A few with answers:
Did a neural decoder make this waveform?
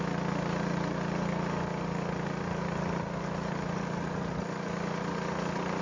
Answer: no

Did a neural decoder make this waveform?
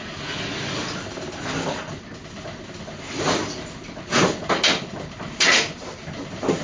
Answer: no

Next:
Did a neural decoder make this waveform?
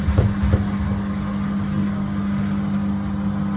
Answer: no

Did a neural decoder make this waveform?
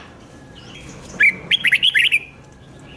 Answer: no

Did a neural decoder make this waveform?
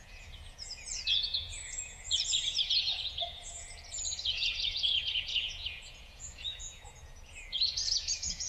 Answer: yes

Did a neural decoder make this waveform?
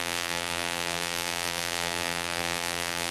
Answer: yes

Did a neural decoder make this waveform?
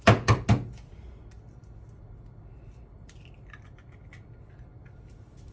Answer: no